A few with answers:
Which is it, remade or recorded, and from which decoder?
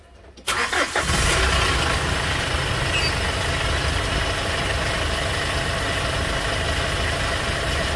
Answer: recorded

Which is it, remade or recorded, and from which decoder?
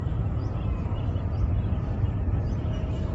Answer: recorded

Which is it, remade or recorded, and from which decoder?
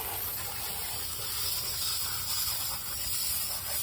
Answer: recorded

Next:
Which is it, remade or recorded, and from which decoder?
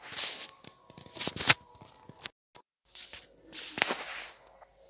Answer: recorded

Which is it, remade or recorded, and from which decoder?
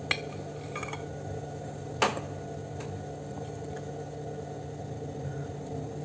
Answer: recorded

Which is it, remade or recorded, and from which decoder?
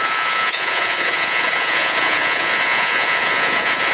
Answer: remade, vocoder, Vocos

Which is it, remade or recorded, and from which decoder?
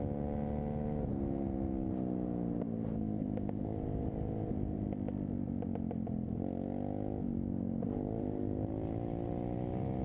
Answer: recorded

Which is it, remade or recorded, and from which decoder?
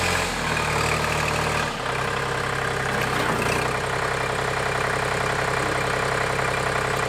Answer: recorded